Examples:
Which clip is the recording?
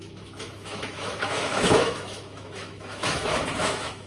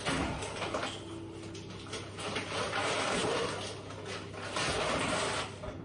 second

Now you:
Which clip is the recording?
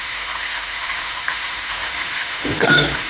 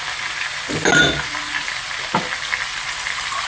second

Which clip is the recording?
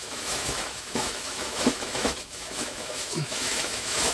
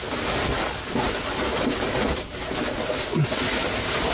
second